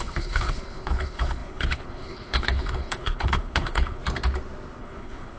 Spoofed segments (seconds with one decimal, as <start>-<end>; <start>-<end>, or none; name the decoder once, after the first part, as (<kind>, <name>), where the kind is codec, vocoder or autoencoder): 0.0-4.0 (codec, HILCodec); 4.8-5.4